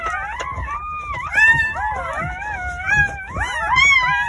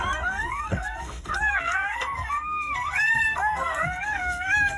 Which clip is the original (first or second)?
first